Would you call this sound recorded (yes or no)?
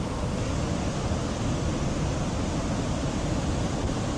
yes